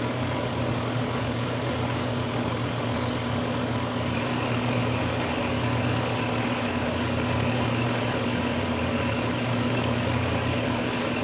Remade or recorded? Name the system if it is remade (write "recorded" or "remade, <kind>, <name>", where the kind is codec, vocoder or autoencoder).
remade, codec, DAC